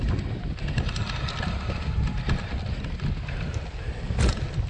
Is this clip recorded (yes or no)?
no